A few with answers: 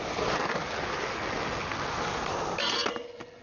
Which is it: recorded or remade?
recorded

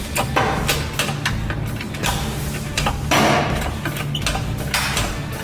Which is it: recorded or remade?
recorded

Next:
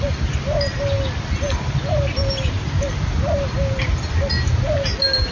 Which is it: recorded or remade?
recorded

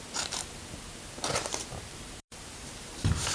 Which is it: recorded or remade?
remade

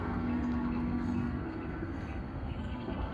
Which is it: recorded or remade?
remade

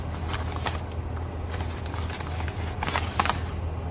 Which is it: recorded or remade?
recorded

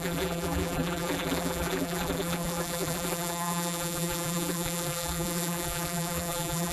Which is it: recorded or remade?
remade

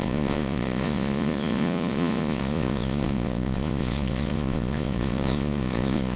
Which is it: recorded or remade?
remade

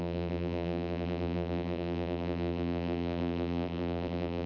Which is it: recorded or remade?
remade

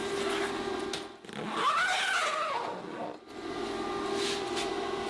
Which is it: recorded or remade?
recorded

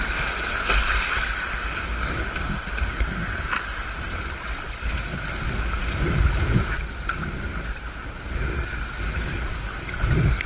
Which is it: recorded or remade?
recorded